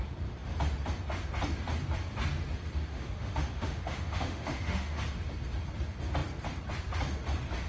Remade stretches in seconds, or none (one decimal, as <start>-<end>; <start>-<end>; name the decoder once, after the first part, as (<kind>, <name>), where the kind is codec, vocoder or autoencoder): 2.9-5.0 (autoencoder, DAC-VAE)